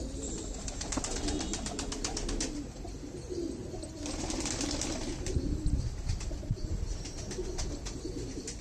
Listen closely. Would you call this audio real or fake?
real